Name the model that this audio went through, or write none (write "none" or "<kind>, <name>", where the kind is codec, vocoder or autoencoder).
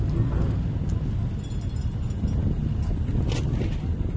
none